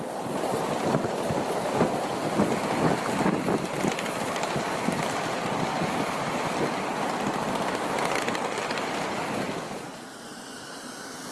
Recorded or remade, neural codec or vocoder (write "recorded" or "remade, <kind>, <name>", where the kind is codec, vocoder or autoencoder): recorded